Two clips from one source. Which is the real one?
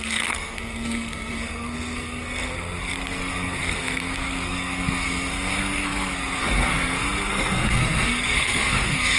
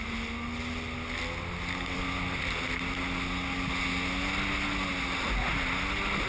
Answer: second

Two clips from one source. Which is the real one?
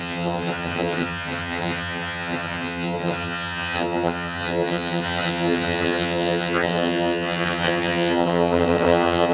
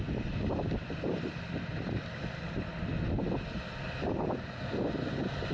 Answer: second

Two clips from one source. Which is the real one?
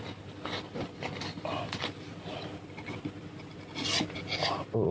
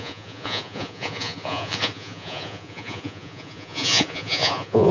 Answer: first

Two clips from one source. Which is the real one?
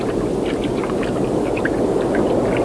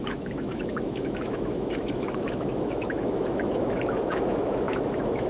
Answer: first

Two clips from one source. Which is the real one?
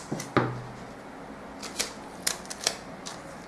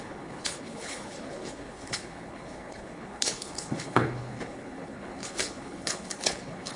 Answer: first